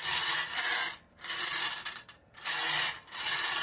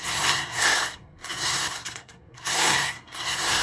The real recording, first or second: first